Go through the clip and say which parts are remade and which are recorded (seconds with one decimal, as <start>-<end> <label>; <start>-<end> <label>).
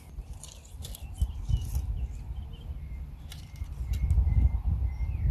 0.0-5.3 recorded